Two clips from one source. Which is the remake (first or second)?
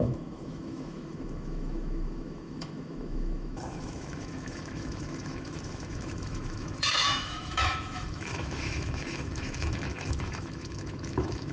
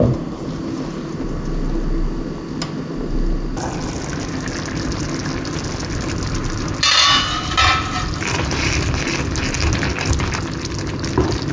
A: first